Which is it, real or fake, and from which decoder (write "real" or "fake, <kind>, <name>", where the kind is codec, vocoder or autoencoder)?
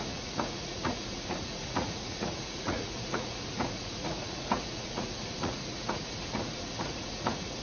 fake, vocoder, Vocos